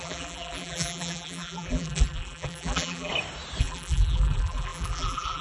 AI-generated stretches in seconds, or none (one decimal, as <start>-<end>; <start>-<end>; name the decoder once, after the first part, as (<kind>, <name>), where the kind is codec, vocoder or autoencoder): 0.0-3.1 (vocoder, BigVGAN v2); 3.6-5.4